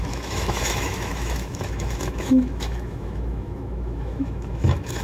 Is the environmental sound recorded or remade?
remade